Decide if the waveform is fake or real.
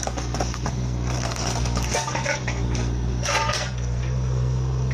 fake